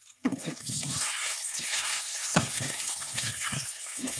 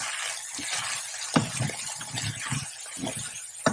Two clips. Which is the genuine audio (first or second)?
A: second